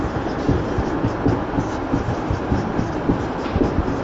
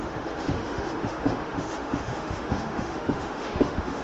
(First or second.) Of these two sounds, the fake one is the second